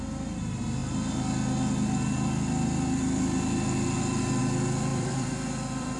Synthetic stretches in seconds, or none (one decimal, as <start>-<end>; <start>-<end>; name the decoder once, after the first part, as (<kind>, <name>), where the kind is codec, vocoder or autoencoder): 4.9-6.0 (vocoder, BigVGAN v2)